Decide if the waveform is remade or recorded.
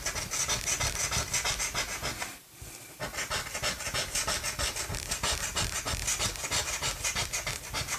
recorded